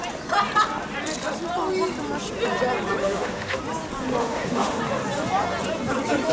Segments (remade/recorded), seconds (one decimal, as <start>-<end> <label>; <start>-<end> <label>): 0.0-3.0 recorded; 3.0-3.6 remade; 3.6-4.2 recorded; 4.2-4.8 remade; 4.8-6.3 recorded